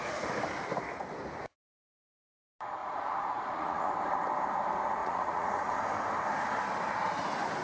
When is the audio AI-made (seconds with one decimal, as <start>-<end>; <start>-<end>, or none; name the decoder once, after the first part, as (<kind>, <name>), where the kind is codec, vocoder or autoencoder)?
2.8-3.9 (vocoder, Vocos); 5.0-5.7